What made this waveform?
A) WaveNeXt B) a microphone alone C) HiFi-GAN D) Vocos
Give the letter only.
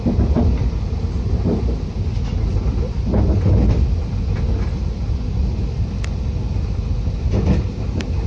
B